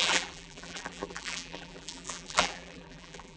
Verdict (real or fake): fake